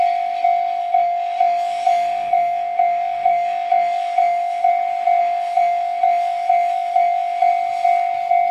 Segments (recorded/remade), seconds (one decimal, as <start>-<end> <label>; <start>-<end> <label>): 0.0-0.8 recorded; 0.8-4.7 remade; 4.7-5.2 recorded; 5.2-7.5 remade; 7.5-8.5 recorded